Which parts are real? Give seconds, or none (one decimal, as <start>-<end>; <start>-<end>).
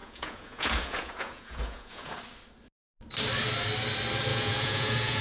2.2-4.3